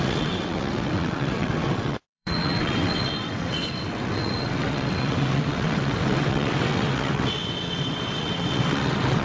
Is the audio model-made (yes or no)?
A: yes